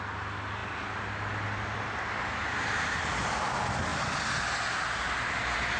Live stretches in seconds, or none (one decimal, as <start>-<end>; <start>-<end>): 0.0-5.8